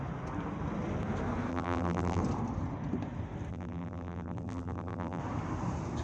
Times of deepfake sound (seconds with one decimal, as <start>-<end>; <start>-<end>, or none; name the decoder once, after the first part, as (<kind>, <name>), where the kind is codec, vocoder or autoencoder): 1.5-2.2 (vocoder, BigVGAN v2); 3.5-5.2